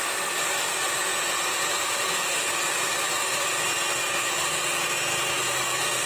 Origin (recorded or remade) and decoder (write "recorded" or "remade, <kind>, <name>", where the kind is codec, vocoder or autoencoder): recorded